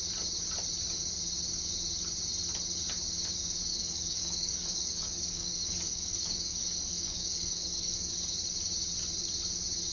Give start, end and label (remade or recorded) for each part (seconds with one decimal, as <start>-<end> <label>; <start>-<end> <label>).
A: 0.0-3.7 recorded; 3.7-8.1 remade; 8.1-9.9 recorded